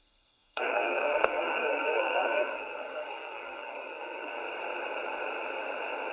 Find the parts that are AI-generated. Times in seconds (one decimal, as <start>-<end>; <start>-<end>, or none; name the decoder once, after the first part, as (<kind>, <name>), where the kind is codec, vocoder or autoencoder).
0.0-4.4 (codec, SNAC)